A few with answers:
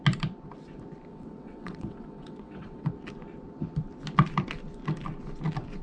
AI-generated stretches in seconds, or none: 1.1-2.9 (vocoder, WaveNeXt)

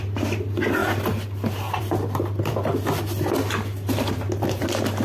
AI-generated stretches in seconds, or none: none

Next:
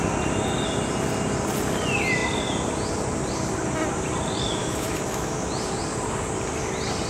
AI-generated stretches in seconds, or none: 4.6-5.5 (autoencoder, DAC-VAE)

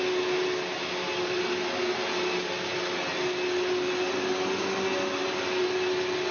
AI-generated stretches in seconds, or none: none

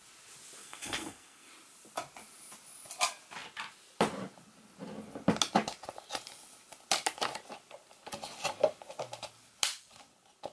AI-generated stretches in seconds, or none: 0.6-1.5 (codec, SNAC)